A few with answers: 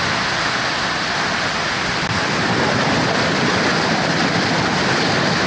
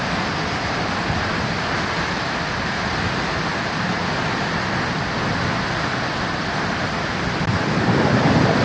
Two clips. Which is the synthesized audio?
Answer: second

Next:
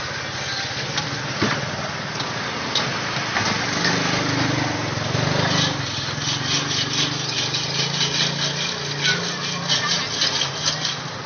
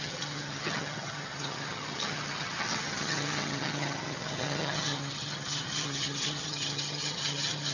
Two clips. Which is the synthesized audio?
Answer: second